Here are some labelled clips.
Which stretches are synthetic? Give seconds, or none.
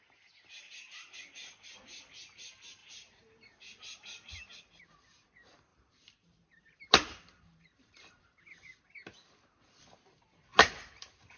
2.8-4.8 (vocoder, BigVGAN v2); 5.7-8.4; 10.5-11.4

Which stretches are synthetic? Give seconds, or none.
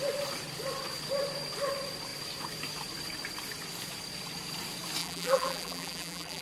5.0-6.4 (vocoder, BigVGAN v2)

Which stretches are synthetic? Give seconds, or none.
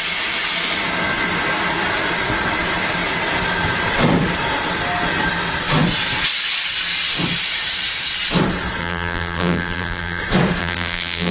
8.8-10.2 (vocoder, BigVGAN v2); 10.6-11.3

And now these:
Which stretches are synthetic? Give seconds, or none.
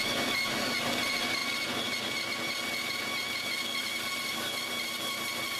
none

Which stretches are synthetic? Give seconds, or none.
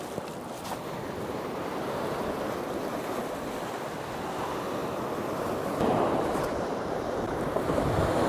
4.8-7.9 (vocoder, BigVGAN v2)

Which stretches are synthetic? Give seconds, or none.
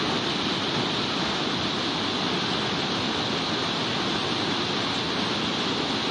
none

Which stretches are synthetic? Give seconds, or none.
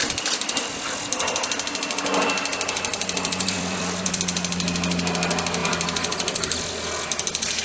0.0-0.6 (vocoder, BigVGAN v2); 2.9-4.2; 5.6-6.7